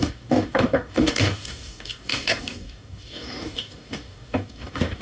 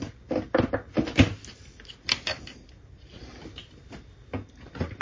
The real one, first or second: second